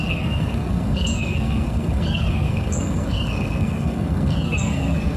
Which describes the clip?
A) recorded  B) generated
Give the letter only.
B